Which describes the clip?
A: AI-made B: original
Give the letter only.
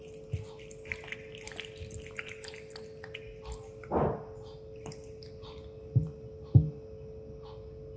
B